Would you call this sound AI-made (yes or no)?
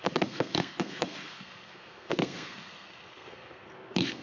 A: yes